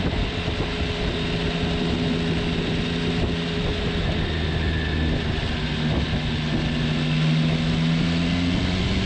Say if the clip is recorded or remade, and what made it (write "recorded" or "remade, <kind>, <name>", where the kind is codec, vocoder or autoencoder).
recorded